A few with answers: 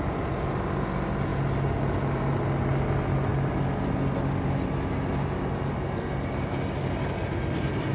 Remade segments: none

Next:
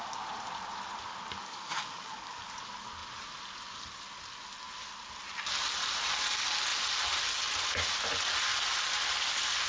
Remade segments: 1.4-2.4 (codec, DAC)

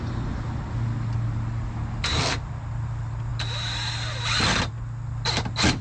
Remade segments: none

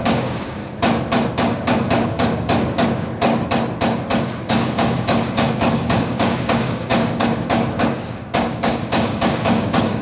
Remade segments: 0.0-0.6 (codec, DAC); 1.3-3.1; 4.5-10.0

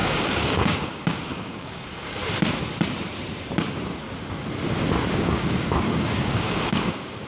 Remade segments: 0.0-2.2 (codec, DAC); 5.1-7.3

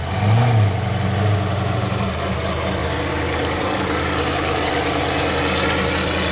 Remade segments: 2.8-4.7 (codec, DAC)

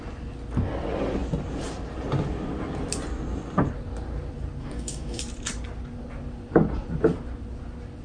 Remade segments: 4.6-5.2 (codec, DAC)